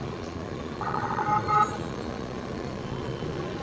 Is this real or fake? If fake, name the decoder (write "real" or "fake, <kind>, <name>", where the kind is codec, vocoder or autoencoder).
fake, vocoder, Vocos